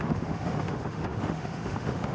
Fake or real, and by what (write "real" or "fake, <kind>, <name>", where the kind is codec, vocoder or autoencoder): fake, autoencoder, DAC-VAE